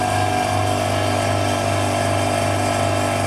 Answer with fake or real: real